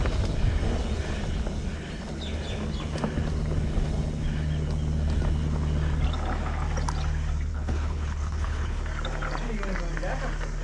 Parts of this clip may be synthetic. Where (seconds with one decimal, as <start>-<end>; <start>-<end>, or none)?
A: 7.5-8.8